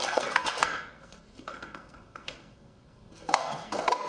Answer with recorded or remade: remade